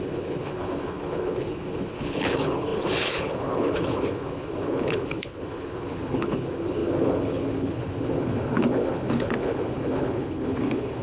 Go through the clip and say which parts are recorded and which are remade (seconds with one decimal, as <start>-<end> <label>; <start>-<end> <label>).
0.0-11.0 remade